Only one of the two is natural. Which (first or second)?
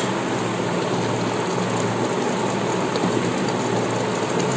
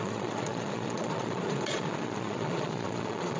first